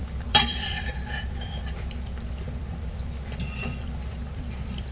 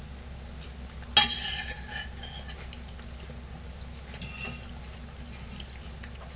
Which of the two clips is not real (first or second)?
first